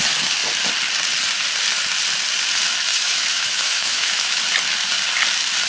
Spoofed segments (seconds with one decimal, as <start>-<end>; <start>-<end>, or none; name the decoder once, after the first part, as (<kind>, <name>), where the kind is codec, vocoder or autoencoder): 2.9-4.4 (autoencoder, DAC-VAE)